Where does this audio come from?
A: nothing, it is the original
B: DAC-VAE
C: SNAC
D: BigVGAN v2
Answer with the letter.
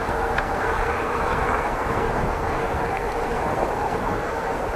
C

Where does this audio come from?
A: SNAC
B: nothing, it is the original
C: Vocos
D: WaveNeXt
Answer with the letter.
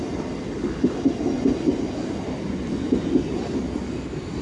B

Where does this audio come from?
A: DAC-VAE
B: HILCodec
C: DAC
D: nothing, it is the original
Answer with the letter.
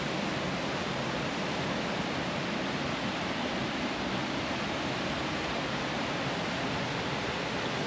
D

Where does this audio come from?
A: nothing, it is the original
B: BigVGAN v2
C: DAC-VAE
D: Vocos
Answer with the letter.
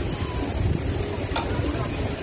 A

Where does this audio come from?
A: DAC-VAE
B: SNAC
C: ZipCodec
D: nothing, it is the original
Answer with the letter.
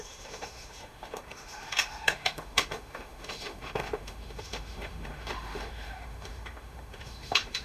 A